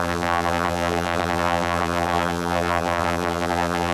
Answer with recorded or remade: remade